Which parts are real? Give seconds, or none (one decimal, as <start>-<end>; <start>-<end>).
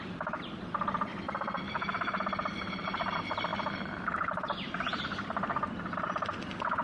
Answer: 0.0-3.5; 5.0-6.8